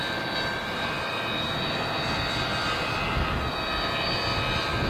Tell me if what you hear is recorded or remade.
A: recorded